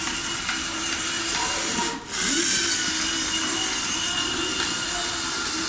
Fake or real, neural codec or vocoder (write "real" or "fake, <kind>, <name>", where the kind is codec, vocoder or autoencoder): real